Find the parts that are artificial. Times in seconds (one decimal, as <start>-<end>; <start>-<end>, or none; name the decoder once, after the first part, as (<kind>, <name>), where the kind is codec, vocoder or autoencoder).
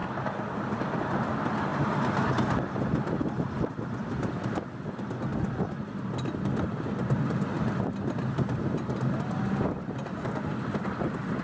none